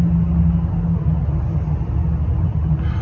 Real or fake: real